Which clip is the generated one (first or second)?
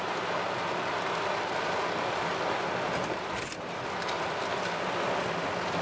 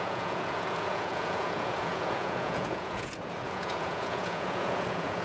second